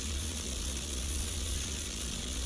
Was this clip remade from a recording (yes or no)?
yes